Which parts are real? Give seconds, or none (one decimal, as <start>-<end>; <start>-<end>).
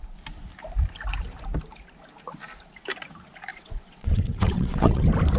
0.0-3.5; 5.0-5.4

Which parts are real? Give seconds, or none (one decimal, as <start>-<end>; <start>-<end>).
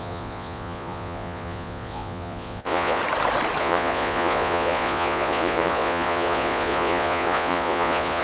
3.0-3.6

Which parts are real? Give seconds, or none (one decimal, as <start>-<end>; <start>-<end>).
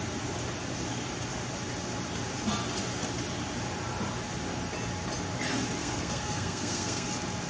0.0-5.8; 7.1-7.5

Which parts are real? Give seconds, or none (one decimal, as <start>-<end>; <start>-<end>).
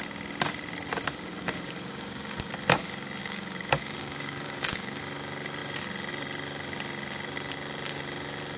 0.0-1.3; 2.5-3.2; 5.0-8.6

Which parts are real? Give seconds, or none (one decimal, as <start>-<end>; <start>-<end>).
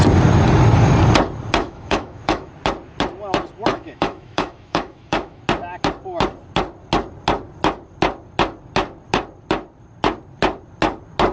0.0-1.6; 2.5-3.7; 5.4-11.3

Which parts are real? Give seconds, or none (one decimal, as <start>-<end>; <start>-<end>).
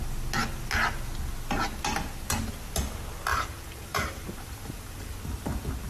0.0-3.3; 5.2-5.9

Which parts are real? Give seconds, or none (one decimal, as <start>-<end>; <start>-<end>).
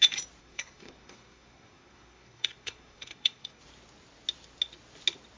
0.0-0.4; 3.6-5.4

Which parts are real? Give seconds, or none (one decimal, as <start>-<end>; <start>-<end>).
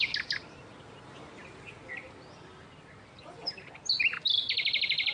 0.0-5.1